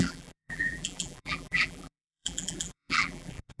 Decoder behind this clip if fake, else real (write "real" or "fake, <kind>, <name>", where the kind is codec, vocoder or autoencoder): fake, vocoder, BigVGAN v2